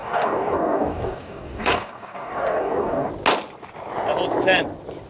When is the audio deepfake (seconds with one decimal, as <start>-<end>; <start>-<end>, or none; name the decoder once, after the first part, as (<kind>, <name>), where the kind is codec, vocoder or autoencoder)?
0.0-3.1 (codec, DAC)